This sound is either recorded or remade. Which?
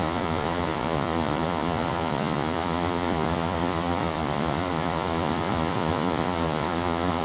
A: remade